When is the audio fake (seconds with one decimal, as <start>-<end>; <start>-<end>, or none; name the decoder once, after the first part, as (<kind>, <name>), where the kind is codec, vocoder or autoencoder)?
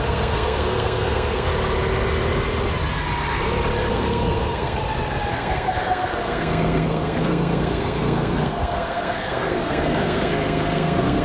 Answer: 0.0-1.5 (codec, SNAC); 3.9-4.8; 5.3-11.2